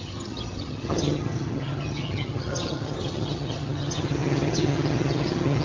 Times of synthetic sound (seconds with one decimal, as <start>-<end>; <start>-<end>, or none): 0.0-5.6

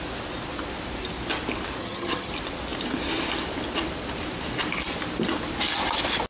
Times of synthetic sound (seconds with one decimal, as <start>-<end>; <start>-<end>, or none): 1.8-2.3

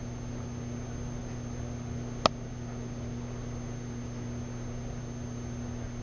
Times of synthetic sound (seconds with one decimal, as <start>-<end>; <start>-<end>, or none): none

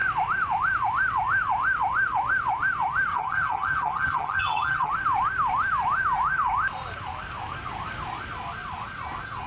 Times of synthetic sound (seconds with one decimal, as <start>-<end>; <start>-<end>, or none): 3.1-4.9

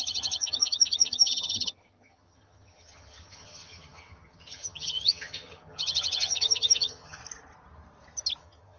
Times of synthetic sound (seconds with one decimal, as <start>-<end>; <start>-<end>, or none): 0.0-7.2; 8.4-8.8

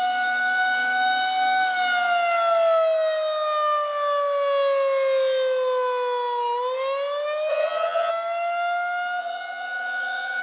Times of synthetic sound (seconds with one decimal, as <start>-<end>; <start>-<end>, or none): 7.5-8.1; 9.2-10.4